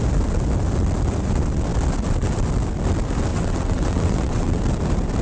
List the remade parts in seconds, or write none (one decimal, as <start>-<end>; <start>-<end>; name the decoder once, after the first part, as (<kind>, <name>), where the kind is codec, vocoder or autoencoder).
3.3-4.6 (vocoder, WaveNeXt)